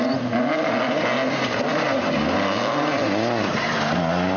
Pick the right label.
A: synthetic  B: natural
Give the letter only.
B